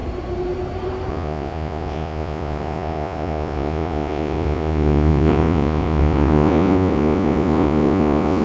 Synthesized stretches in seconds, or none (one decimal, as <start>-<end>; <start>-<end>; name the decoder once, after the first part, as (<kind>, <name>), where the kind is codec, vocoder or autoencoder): 1.1-8.4 (vocoder, Vocos)